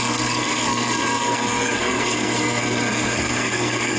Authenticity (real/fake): fake